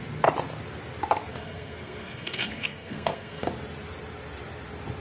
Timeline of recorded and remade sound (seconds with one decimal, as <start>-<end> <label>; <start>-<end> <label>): 0.0-1.3 recorded; 1.3-3.5 remade; 3.5-5.0 recorded